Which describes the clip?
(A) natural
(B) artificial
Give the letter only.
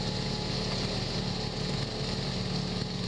A